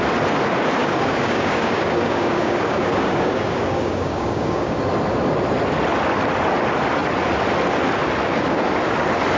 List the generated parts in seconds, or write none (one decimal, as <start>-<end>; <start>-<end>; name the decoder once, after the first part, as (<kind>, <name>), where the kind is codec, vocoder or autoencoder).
0.8-4.8 (codec, DAC)